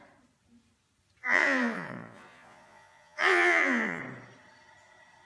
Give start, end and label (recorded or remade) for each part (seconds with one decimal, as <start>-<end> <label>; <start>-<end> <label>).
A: 0.0-1.2 recorded; 1.2-4.0 remade; 4.0-5.2 recorded